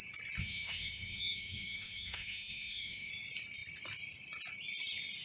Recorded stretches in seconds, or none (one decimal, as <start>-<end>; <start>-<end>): 0.0-0.4; 3.1-5.2